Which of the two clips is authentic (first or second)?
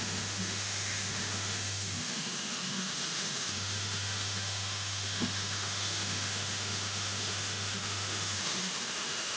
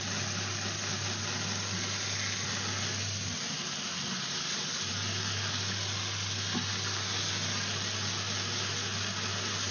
second